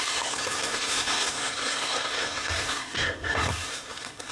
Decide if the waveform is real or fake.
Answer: fake